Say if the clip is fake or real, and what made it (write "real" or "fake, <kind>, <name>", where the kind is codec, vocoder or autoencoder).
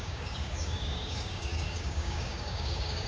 fake, codec, DAC